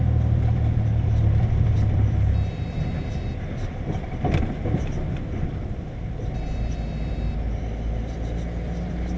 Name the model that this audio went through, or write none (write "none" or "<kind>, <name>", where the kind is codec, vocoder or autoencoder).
vocoder, BigVGAN v2